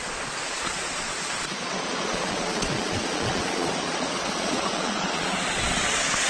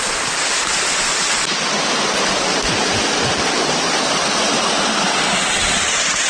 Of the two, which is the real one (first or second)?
second